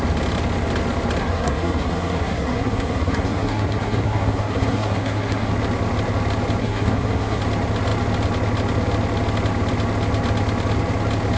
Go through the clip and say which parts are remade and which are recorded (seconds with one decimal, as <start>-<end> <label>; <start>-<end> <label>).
0.0-1.2 recorded; 1.2-5.5 remade; 5.5-6.6 recorded; 6.6-7.4 remade; 7.4-11.4 recorded